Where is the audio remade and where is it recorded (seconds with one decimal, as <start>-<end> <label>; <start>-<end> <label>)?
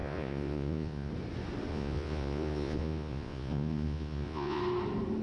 0.0-1.1 remade; 1.1-1.7 recorded; 1.7-4.6 remade; 4.6-5.2 recorded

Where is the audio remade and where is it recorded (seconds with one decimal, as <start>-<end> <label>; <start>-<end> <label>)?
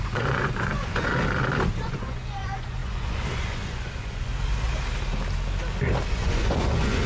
0.0-1.1 remade; 1.1-1.8 recorded; 1.8-4.3 remade; 4.3-6.1 recorded; 6.1-7.1 remade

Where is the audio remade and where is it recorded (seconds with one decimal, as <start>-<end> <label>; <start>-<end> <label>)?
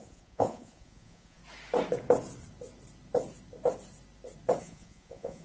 0.0-1.4 remade; 1.4-4.6 recorded; 4.6-5.4 remade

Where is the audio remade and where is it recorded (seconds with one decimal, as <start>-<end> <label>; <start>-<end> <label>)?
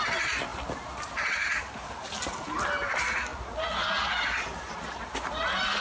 0.0-5.8 recorded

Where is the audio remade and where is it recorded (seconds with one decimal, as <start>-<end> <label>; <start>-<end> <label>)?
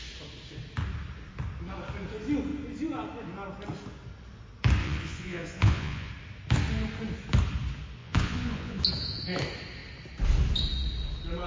0.0-4.8 recorded; 4.8-6.1 remade; 6.1-8.0 recorded; 8.0-8.8 remade; 8.8-11.5 recorded